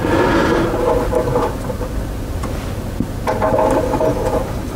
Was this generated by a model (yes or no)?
no